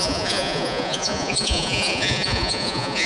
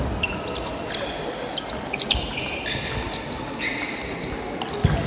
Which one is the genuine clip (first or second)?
second